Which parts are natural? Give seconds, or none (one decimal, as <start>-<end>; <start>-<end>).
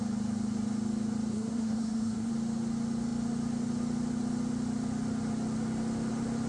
0.0-1.3; 2.3-6.5